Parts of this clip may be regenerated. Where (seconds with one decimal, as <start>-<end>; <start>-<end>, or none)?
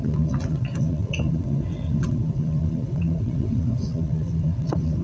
0.0-5.0